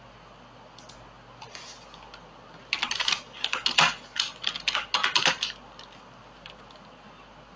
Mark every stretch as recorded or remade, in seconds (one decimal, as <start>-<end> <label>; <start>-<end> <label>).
0.0-7.6 recorded